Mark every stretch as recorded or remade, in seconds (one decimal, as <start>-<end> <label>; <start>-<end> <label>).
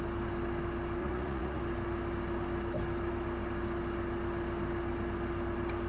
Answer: 0.0-1.0 recorded; 1.0-1.6 remade; 1.6-5.9 recorded